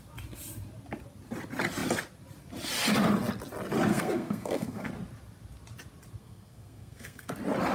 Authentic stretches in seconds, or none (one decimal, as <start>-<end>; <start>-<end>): 0.0-3.9; 4.9-6.2; 7.3-7.7